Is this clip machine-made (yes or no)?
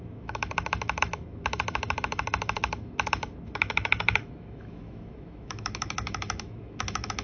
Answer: yes